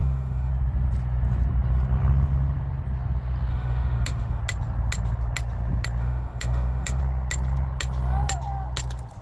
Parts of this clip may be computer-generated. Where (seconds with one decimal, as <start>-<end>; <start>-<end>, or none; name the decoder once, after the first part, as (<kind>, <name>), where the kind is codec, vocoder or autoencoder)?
0.0-0.5 (autoencoder, DAC-VAE); 3.5-4.4; 6.0-7.0